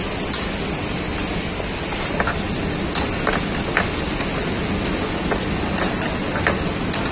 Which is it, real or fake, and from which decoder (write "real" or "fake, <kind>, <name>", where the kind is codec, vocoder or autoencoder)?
real